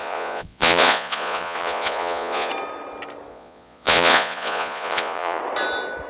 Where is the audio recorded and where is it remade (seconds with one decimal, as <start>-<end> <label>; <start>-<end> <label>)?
0.0-2.5 remade; 2.5-3.3 recorded; 3.3-5.4 remade; 5.4-6.1 recorded